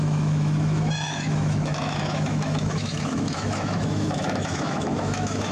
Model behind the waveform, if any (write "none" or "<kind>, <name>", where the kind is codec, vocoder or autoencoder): autoencoder, DAC-VAE